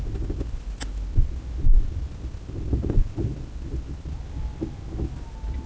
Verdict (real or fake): real